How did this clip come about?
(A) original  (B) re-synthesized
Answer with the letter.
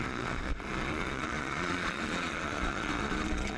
B